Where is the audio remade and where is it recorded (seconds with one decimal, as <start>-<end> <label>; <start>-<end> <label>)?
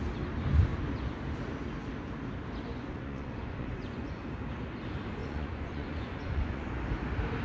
0.0-2.7 recorded; 2.7-4.2 remade; 4.2-5.2 recorded; 5.2-6.7 remade; 6.7-7.4 recorded